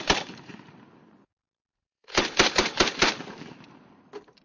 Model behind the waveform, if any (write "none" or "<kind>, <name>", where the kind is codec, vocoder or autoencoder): vocoder, BigVGAN v2